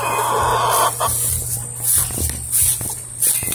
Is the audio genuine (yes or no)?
yes